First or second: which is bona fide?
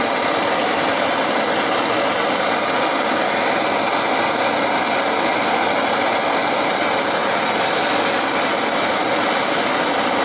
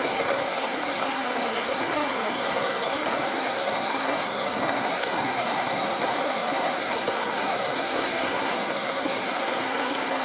first